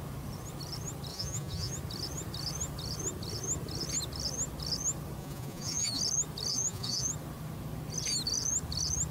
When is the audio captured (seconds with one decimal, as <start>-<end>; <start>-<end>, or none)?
0.0-1.1; 1.7-5.2; 6.0-6.5; 7.1-9.1

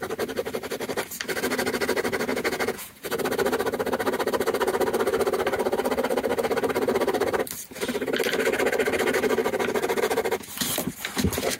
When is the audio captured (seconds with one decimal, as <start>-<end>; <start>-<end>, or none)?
0.0-2.3; 3.2-11.6

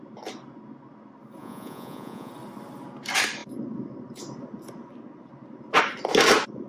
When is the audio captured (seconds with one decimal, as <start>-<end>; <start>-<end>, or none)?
0.0-1.4; 2.3-6.7

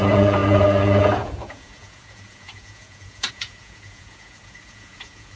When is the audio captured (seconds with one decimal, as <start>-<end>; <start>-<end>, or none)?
none

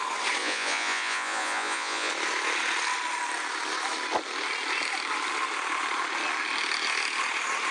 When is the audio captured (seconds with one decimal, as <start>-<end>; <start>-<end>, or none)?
0.0-0.4; 2.1-7.7

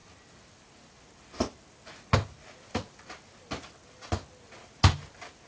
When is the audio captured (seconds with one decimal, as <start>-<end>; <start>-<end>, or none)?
0.0-5.5